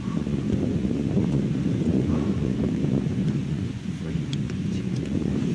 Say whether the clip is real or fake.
fake